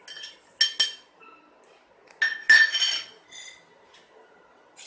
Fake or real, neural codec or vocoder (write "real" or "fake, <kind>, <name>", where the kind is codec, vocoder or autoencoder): real